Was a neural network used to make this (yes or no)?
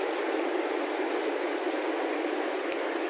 no